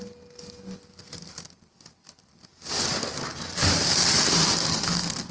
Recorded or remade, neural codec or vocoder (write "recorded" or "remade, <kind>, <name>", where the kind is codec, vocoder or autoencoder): recorded